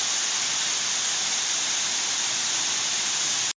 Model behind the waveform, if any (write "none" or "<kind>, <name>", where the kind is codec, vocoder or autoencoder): none